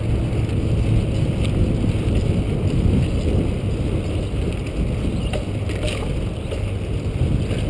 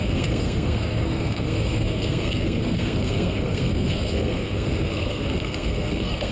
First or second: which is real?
first